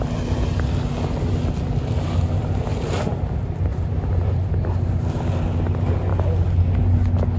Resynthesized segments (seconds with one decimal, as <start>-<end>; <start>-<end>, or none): none